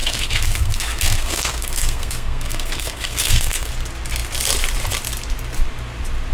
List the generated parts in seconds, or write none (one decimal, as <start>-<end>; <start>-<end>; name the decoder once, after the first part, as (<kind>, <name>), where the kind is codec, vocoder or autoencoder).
0.0-3.7 (codec, SNAC)